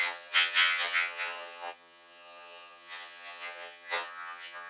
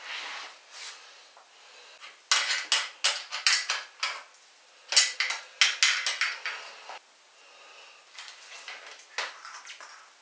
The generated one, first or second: first